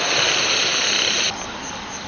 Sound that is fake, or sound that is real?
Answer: real